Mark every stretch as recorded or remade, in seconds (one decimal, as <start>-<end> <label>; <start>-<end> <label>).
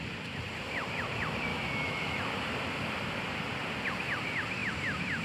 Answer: 0.0-1.5 recorded; 1.5-2.2 remade; 2.2-5.2 recorded